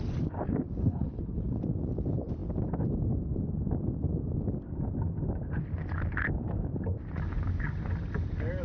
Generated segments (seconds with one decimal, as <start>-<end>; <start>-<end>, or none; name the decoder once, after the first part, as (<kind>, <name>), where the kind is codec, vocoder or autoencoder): 0.8-1.6 (codec, HILCodec)